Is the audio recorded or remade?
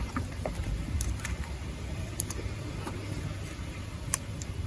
remade